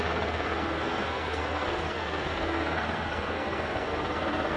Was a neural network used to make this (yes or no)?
yes